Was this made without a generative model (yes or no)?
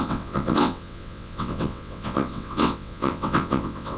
no